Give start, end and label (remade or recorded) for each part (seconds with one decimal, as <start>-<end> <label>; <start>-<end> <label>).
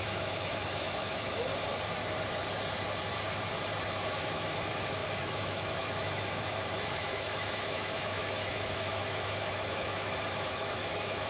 0.0-1.5 remade; 1.5-4.1 recorded; 4.1-11.3 remade